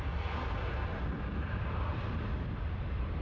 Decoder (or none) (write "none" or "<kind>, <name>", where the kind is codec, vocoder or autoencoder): none